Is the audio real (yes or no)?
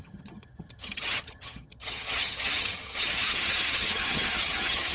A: no